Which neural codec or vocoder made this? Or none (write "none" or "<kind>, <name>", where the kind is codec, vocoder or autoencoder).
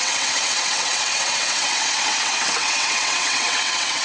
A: vocoder, WaveNeXt